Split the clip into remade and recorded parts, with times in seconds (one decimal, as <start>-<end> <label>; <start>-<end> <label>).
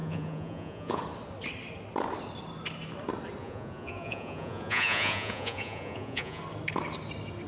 0.0-1.0 remade; 1.0-3.4 recorded; 3.4-6.4 remade; 6.4-7.5 recorded